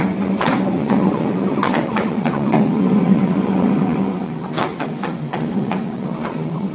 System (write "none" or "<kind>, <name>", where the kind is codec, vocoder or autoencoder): vocoder, WaveNeXt